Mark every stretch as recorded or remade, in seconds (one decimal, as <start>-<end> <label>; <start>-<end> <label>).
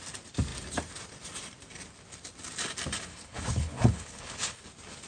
0.0-3.1 recorded; 3.1-4.6 remade; 4.6-5.1 recorded